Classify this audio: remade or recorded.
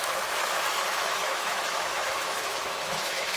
remade